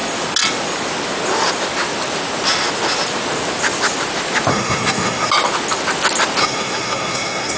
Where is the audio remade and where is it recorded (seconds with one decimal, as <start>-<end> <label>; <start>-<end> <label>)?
0.0-4.5 recorded; 4.5-5.3 remade; 5.3-6.4 recorded; 6.4-7.6 remade